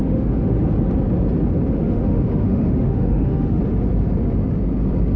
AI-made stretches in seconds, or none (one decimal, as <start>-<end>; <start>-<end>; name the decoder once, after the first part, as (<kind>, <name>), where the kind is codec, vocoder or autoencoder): 0.0-0.6 (autoencoder, DAC-VAE); 1.8-3.6